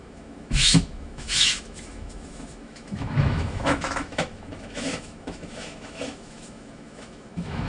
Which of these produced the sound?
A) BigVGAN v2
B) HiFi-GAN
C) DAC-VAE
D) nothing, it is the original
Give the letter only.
C